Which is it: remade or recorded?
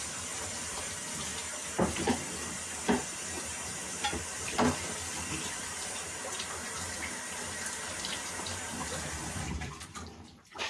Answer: remade